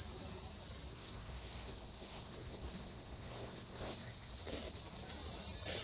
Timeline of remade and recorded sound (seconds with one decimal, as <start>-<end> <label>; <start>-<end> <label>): 0.0-0.9 recorded; 0.9-4.4 remade; 4.4-5.8 recorded

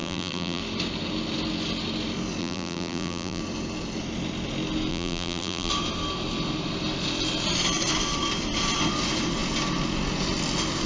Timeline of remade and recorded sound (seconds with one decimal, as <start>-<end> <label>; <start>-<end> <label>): 0.0-0.6 remade; 0.6-2.4 recorded; 2.4-3.4 remade; 3.4-4.9 recorded; 4.9-5.7 remade; 5.7-10.9 recorded

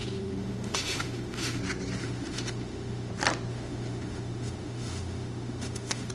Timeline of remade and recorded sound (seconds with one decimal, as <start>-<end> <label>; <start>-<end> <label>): 0.0-1.6 remade; 1.6-2.0 recorded; 2.0-3.1 remade; 3.1-3.5 recorded; 3.5-6.1 remade

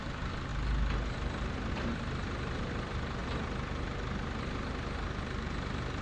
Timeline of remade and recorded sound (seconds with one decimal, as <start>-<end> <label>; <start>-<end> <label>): 0.0-0.5 remade; 0.5-1.7 recorded; 1.7-3.2 remade; 3.2-6.0 recorded

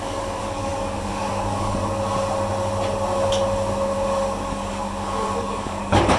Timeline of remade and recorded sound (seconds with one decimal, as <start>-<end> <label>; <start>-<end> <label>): 0.0-1.8 remade; 1.8-4.4 recorded; 4.4-6.2 remade

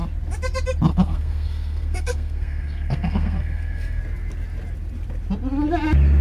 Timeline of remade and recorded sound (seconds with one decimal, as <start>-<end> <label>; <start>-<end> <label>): 0.0-0.9 recorded; 0.9-4.0 remade; 4.0-6.2 recorded